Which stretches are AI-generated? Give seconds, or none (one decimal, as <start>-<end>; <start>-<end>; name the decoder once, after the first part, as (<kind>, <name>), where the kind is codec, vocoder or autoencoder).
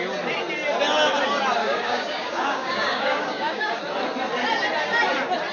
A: 1.6-3.8 (codec, DAC)